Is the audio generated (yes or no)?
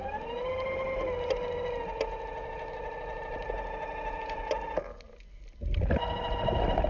no